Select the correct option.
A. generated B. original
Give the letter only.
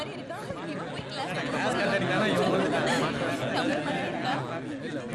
B